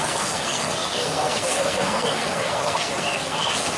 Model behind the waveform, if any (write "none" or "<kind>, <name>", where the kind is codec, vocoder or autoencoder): codec, SNAC